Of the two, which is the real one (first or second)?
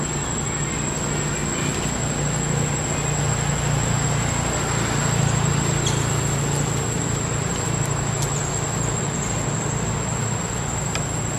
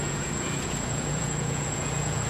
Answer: first